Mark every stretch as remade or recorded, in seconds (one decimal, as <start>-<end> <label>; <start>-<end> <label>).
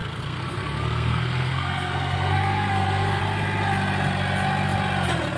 0.0-3.2 remade; 3.2-5.4 recorded